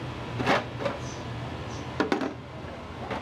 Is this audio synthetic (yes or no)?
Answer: no